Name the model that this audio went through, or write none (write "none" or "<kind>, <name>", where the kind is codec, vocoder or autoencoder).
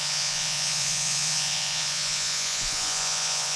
vocoder, Vocos